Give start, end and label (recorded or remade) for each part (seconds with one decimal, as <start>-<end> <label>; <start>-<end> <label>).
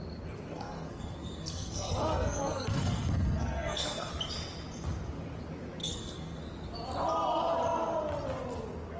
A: 0.0-0.5 recorded; 0.5-4.1 remade; 4.1-5.8 recorded; 5.8-6.4 remade; 6.4-9.0 recorded